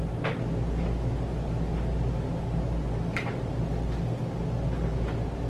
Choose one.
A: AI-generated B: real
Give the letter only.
B